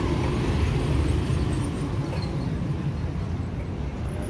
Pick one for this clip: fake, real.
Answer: real